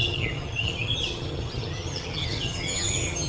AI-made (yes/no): yes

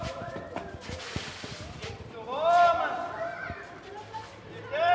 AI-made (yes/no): no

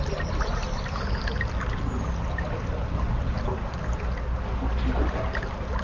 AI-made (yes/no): no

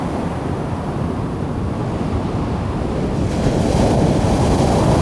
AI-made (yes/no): no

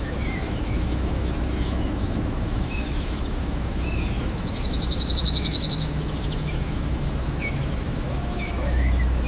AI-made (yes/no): yes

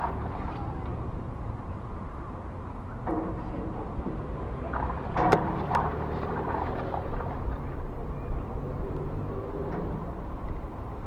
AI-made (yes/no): yes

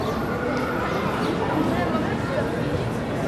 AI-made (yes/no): no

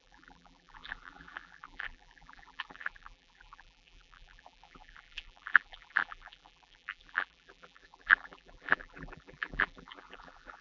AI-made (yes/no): yes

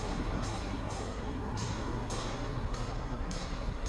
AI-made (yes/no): yes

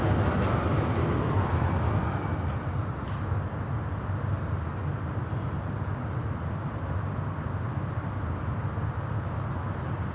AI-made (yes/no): no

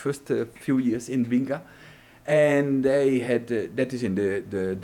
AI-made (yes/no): yes